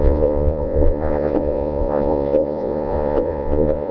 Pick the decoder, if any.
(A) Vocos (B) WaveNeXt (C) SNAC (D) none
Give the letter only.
A